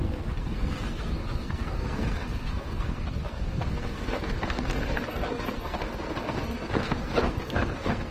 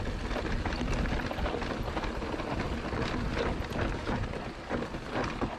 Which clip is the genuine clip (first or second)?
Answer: second